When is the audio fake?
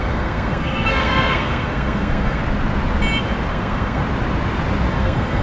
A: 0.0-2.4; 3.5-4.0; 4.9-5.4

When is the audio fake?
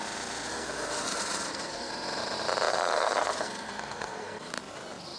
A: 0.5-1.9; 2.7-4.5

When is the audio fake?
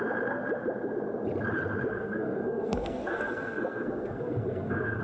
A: 1.9-5.0